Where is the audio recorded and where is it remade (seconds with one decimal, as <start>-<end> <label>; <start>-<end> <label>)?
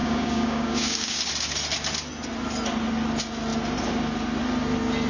0.0-1.3 remade; 1.3-5.1 recorded